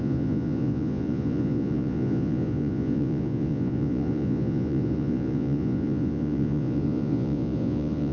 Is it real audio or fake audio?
fake